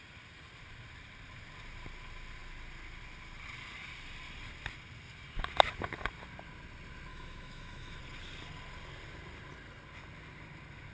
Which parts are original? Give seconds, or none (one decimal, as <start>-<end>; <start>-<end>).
0.0-7.1; 8.0-10.9